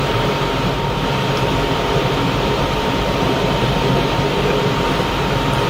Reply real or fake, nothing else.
fake